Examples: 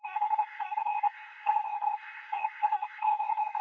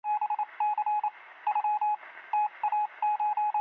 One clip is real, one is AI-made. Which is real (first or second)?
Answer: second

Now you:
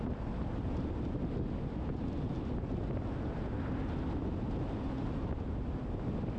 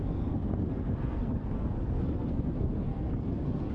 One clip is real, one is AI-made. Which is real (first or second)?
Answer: first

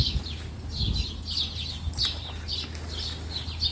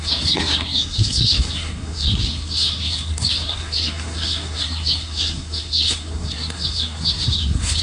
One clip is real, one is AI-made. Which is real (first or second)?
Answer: first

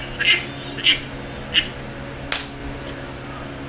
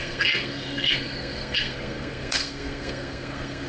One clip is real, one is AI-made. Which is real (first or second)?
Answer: first